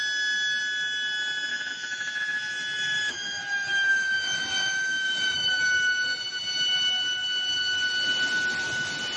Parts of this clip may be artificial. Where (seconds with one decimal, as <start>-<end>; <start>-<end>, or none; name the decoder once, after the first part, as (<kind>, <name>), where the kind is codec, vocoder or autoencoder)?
1.5-5.5 (autoencoder, DAC-VAE)